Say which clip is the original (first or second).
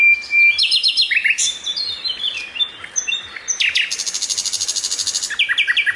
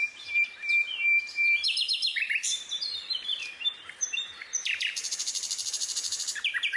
first